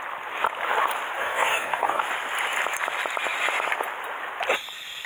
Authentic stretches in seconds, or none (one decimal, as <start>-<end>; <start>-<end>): 0.0-1.2; 2.0-5.1